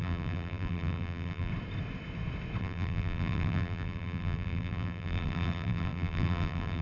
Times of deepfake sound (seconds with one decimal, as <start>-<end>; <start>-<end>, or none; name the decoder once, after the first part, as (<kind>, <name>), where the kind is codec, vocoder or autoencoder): 0.0-1.5 (vocoder, BigVGAN v2); 2.6-6.8